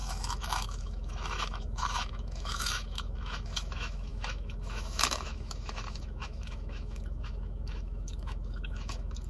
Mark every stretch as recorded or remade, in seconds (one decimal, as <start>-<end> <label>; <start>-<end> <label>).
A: 0.0-9.3 remade